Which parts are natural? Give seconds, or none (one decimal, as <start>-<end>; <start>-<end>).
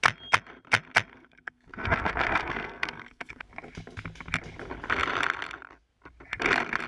0.0-1.1; 3.4-6.9